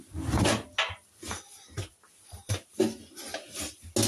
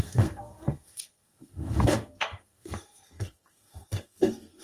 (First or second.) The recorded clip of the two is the first